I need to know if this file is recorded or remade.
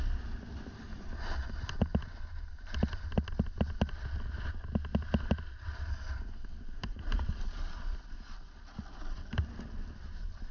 recorded